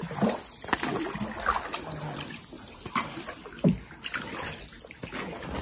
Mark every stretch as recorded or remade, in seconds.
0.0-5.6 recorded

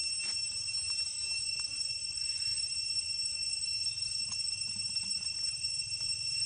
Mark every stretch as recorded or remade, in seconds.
0.0-1.4 recorded; 1.4-6.5 remade